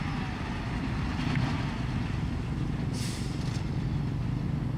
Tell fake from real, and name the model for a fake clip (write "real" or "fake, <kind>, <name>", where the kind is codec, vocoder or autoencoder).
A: real